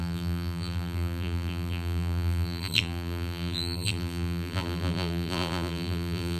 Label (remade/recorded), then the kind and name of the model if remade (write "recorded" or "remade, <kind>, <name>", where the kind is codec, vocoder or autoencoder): remade, vocoder, BigVGAN v2